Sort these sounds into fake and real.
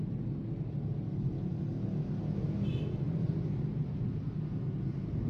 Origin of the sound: real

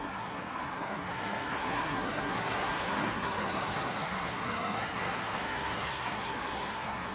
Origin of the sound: fake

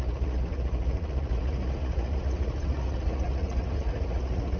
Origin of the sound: fake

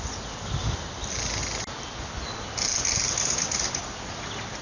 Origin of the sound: real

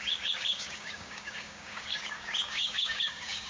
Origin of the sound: fake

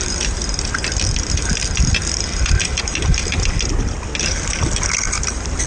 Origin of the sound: real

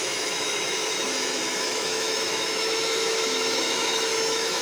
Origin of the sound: fake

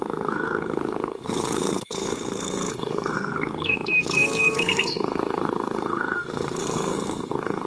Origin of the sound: fake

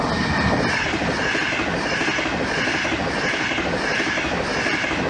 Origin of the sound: real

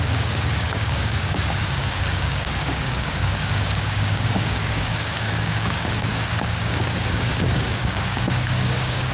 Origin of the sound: fake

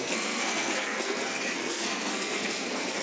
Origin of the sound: fake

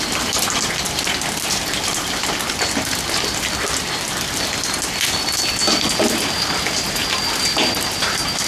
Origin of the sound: real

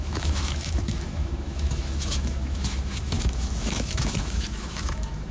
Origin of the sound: fake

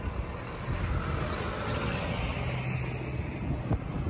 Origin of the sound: real